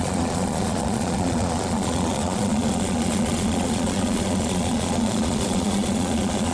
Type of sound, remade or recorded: remade